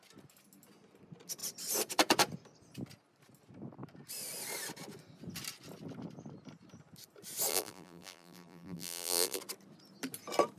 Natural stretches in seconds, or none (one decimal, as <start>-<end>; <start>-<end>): 0.0-7.5; 9.4-10.6